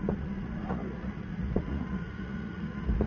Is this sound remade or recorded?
remade